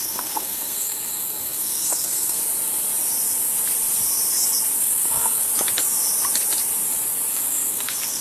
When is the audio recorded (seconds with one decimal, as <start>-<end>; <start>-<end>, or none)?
2.4-4.8; 5.5-7.3